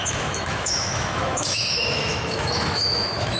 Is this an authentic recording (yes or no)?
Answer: no